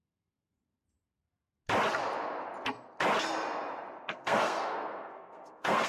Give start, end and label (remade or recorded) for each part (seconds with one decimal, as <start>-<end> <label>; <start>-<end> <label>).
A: 0.0-0.6 remade; 0.6-4.1 recorded; 4.1-5.9 remade